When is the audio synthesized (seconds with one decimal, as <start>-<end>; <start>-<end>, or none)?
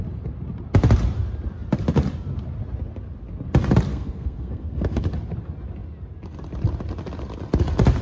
3.9-5.0